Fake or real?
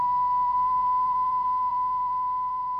fake